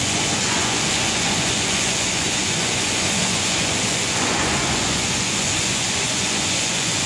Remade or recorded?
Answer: remade